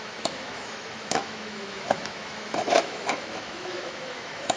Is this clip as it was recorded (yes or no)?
no